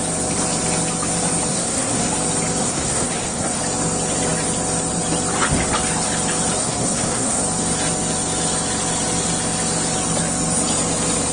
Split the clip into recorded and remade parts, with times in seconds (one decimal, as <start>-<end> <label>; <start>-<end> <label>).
0.0-1.5 recorded; 1.5-2.1 remade; 2.1-2.6 recorded; 2.6-3.6 remade; 3.6-6.6 recorded; 6.6-7.4 remade; 7.4-11.3 recorded